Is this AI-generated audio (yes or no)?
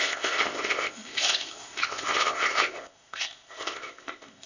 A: yes